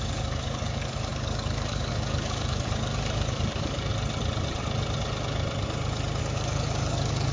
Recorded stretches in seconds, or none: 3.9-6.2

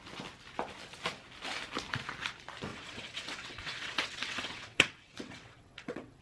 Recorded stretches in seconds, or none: 0.0-2.7

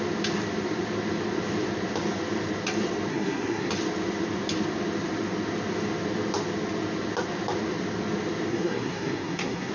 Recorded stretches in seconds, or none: 0.0-3.1; 3.7-8.5

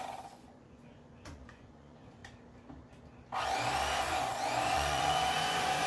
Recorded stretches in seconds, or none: 2.2-4.0

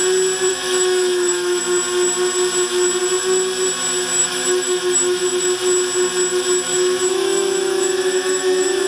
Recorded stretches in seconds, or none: 0.0-0.5; 1.6-4.2; 5.4-6.7

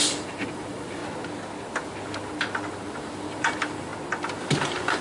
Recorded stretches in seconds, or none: 1.0-2.7; 3.9-4.4

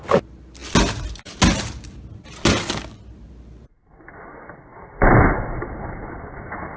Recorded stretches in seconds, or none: 0.0-6.8

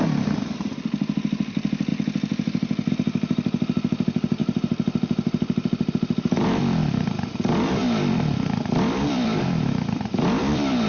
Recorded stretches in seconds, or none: 1.9-2.9